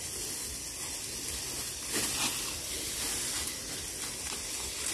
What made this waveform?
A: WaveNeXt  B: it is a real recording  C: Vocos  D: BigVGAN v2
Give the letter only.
B